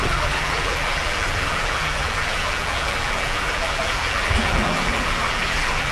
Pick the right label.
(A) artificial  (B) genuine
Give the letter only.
A